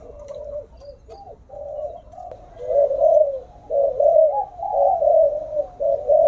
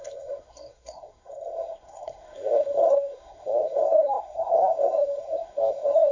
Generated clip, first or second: second